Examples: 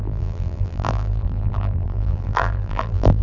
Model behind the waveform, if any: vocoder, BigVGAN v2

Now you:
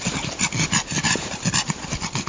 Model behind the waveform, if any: vocoder, BigVGAN v2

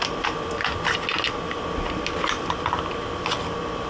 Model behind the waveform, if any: none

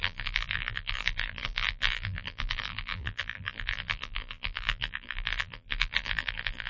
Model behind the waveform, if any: vocoder, BigVGAN v2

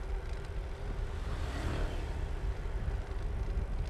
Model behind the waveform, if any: none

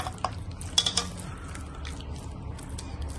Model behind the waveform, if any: none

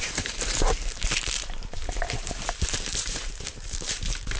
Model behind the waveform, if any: vocoder, BigVGAN v2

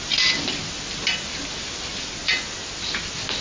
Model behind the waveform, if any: none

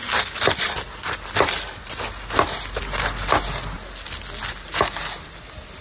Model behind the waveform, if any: none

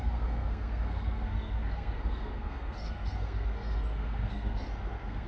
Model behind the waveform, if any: codec, SNAC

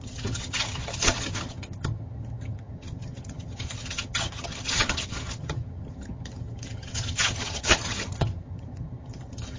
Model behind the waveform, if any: vocoder, HiFi-GAN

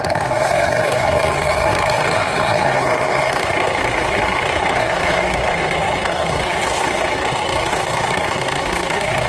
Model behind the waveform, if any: codec, SNAC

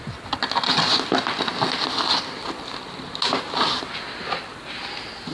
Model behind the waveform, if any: none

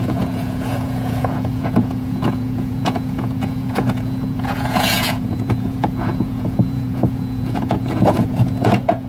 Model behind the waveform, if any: vocoder, Vocos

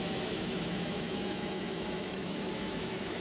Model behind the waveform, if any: autoencoder, DAC-VAE